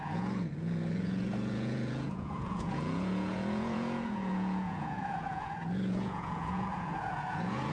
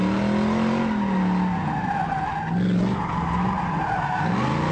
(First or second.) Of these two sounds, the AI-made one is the first